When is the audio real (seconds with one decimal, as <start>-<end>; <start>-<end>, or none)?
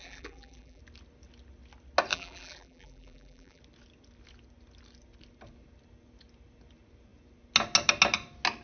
0.8-2.1; 3.6-8.6